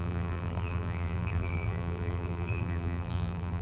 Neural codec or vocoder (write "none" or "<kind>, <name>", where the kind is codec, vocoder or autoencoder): vocoder, BigVGAN v2